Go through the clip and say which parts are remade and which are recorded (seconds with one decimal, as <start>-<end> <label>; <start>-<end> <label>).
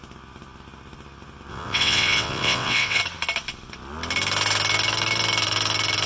0.0-1.5 recorded; 1.5-3.0 remade; 3.0-6.1 recorded